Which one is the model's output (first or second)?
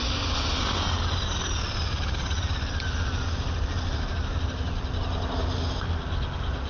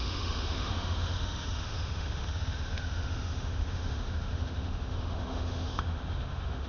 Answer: second